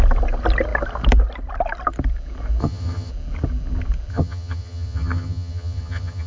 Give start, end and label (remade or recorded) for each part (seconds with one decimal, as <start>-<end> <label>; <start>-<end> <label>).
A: 0.0-2.6 recorded; 2.6-3.1 remade; 3.1-4.1 recorded; 4.1-6.3 remade